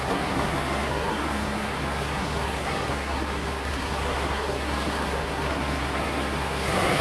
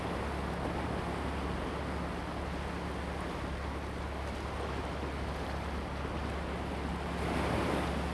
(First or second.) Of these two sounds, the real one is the second